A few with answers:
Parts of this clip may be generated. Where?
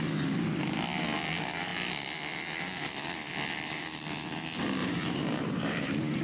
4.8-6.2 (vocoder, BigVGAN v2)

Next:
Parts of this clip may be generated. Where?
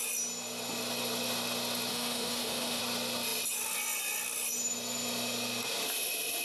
1.9-2.8 (autoencoder, DAC-VAE)